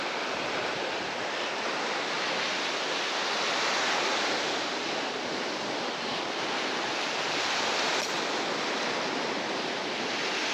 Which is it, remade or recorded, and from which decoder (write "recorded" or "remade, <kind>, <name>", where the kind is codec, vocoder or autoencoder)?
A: recorded